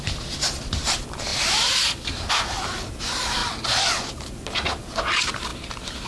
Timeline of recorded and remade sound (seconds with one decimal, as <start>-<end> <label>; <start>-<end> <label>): 0.0-6.1 recorded